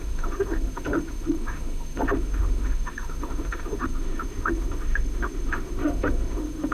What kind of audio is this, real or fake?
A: fake